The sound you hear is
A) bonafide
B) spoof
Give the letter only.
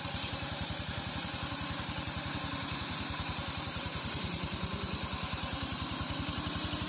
B